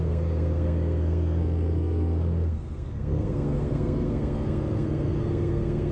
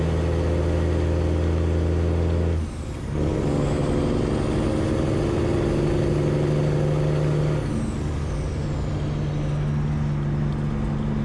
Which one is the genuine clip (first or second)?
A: second